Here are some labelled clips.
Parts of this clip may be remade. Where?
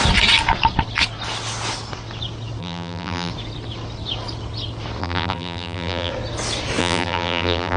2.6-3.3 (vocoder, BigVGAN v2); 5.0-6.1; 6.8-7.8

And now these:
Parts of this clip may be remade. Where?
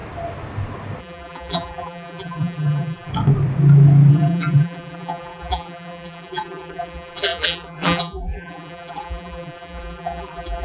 1.0-3.1 (vocoder, BigVGAN v2); 4.1-10.6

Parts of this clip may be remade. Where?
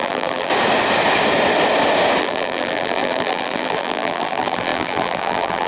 0.0-0.5 (vocoder, BigVGAN v2); 2.2-5.7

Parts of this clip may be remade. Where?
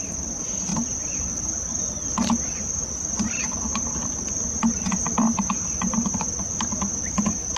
0.7-1.4 (vocoder, BigVGAN v2); 3.7-5.9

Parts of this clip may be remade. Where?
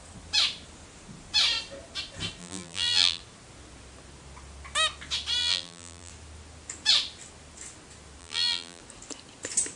2.4-3.2 (vocoder, BigVGAN v2); 5.4-6.1; 8.2-8.8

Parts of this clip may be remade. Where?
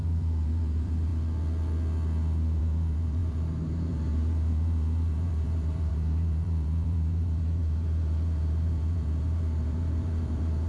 0.0-1.1 (vocoder, BigVGAN v2); 2.6-10.7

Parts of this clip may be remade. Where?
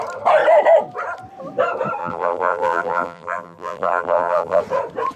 2.0-4.6 (vocoder, BigVGAN v2)